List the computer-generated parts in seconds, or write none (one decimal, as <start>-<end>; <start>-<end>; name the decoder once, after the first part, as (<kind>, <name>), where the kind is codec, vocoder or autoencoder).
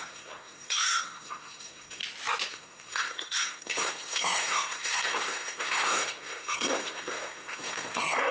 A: 0.0-2.0 (codec, SNAC); 2.5-8.3